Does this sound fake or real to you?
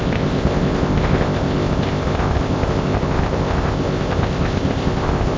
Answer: fake